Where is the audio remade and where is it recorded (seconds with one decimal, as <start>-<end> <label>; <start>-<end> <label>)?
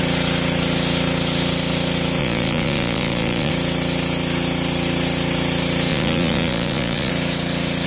0.0-2.2 recorded; 2.2-3.5 remade; 3.5-5.9 recorded; 5.9-7.1 remade; 7.1-7.9 recorded